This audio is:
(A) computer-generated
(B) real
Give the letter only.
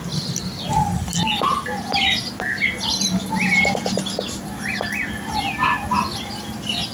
B